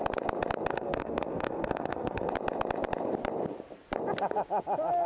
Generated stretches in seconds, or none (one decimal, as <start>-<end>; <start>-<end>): 0.7-2.3